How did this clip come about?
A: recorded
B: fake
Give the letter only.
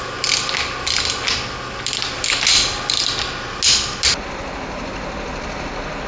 A